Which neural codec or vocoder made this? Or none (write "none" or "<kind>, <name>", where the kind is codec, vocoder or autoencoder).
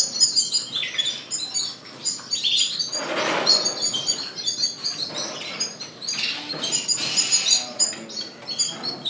none